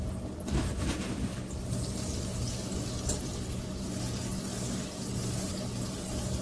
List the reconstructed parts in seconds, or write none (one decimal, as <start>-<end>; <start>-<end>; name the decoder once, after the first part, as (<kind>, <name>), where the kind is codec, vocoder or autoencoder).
none

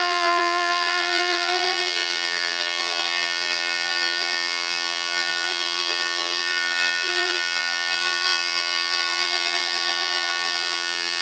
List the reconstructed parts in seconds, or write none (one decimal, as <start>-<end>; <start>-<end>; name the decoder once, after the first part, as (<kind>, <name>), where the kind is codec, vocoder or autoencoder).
0.0-11.2 (vocoder, BigVGAN v2)

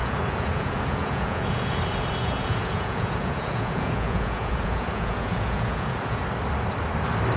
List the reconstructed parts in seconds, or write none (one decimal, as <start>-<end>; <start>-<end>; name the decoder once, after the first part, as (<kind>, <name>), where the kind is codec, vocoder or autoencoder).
0.0-1.8 (vocoder, Vocos); 2.2-6.2

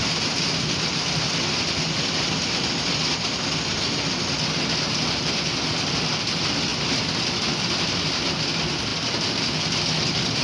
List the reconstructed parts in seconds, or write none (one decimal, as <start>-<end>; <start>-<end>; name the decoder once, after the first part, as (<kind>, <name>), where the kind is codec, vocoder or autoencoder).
none

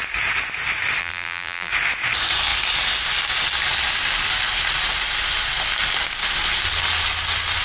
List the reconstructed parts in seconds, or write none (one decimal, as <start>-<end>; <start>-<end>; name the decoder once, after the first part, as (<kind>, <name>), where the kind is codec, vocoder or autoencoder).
1.0-1.7 (vocoder, BigVGAN v2)

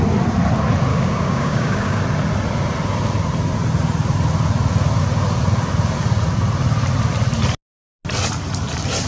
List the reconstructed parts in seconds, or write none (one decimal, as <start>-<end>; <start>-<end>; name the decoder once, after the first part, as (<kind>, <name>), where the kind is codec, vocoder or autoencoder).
0.9-2.0 (codec, DAC)